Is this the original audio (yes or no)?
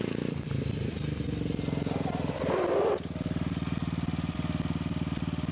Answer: yes